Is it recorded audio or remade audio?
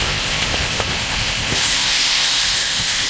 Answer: remade